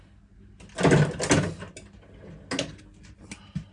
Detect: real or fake real